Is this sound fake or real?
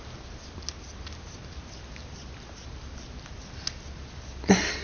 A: real